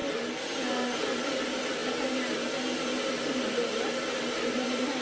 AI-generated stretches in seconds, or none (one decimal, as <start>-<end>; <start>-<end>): none